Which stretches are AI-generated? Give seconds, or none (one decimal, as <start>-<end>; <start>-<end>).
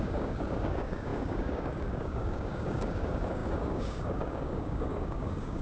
0.0-5.6